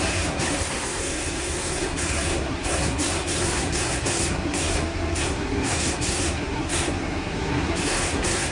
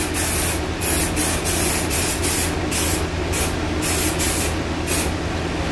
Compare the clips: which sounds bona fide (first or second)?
second